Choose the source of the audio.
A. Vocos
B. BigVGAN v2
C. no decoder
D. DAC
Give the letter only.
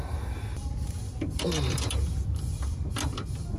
B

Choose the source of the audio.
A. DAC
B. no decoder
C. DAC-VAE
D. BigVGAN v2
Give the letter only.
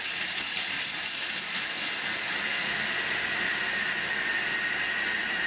B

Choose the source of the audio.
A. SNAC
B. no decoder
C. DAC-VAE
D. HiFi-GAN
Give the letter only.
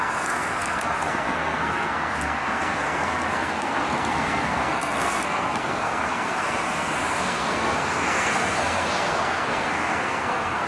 A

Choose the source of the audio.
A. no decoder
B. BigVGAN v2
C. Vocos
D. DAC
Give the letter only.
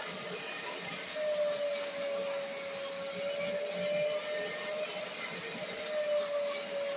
A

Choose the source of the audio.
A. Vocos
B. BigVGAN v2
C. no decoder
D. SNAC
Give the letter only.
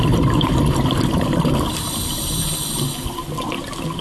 C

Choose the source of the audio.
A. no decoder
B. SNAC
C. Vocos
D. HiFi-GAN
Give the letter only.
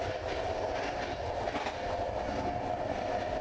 A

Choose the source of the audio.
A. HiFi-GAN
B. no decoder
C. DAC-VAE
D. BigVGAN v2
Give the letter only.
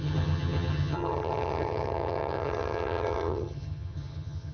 A